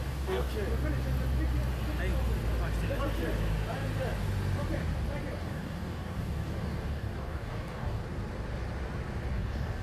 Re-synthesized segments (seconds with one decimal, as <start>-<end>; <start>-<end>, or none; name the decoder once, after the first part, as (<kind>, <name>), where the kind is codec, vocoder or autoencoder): 0.0-0.5 (codec, DAC); 5.4-8.0; 9.3-9.8